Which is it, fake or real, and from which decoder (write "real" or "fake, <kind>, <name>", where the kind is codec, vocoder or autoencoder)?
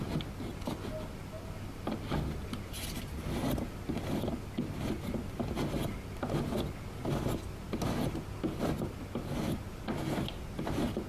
real